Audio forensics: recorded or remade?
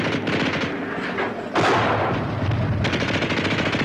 recorded